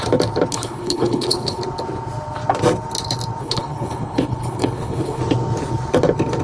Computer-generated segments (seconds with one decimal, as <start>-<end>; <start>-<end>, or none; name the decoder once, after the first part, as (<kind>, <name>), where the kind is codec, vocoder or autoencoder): 0.5-1.6 (codec, HILCodec); 3.4-5.2